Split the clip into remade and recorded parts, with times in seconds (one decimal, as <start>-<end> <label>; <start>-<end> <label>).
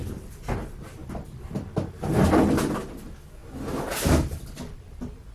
0.0-1.4 remade; 1.4-3.4 recorded; 3.4-5.3 remade